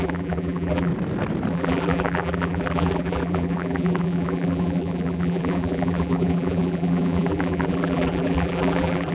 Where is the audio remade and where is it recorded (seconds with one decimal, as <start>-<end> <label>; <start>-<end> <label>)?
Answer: 0.0-0.9 remade; 0.9-1.5 recorded; 1.5-9.1 remade

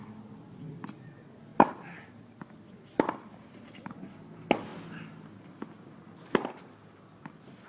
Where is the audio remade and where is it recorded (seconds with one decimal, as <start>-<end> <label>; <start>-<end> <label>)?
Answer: 0.0-1.5 recorded; 1.5-2.1 remade; 2.1-7.7 recorded